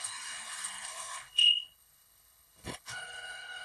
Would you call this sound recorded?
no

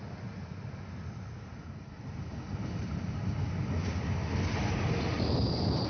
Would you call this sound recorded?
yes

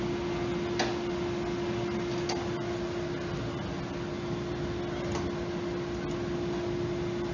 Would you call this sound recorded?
yes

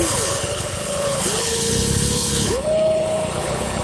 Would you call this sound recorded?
no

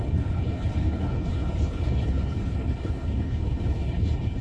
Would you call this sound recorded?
no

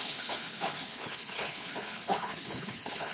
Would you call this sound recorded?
no